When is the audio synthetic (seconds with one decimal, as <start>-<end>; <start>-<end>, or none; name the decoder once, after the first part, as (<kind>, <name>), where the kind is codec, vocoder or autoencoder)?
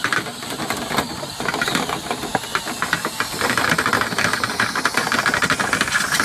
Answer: none